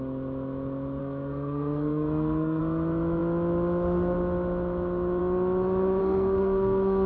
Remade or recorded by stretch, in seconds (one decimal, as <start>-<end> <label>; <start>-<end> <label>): 0.0-1.0 recorded; 1.0-2.6 remade; 2.6-6.0 recorded; 6.0-7.1 remade